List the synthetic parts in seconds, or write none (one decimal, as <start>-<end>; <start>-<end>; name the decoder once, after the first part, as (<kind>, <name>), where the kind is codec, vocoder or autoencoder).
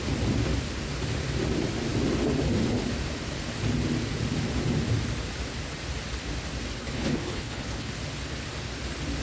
6.8-7.9 (codec, HILCodec)